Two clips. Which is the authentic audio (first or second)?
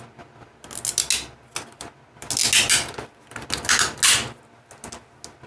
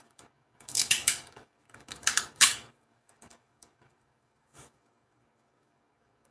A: first